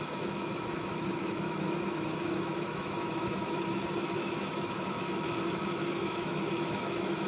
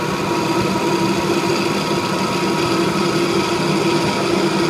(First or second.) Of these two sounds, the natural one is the second